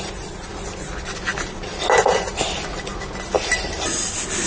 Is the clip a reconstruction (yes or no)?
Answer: no